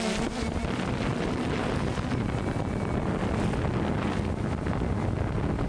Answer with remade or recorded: recorded